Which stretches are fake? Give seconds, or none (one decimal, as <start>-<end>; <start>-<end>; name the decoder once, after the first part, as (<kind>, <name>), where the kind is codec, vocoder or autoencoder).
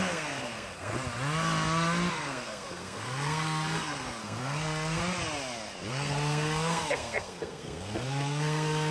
0.0-0.9 (codec, SNAC); 2.1-5.0; 5.9-8.9